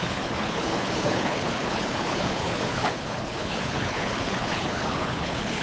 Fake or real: fake